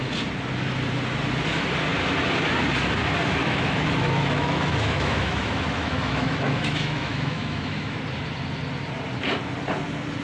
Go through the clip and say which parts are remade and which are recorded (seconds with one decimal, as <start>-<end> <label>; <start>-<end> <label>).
0.0-3.4 recorded; 3.4-8.0 remade; 8.0-10.2 recorded